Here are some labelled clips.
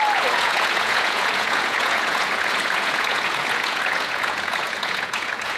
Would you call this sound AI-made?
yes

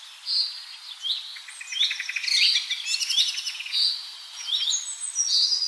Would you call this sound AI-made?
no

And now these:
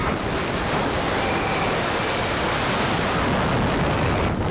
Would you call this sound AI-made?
no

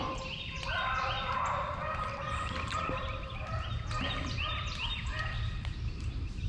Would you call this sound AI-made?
yes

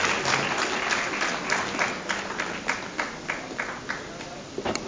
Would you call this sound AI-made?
no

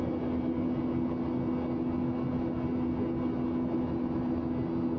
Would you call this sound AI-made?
no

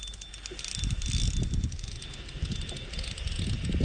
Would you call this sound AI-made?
no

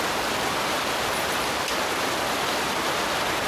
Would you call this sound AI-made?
no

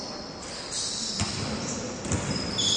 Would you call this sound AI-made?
yes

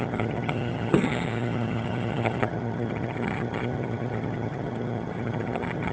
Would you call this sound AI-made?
yes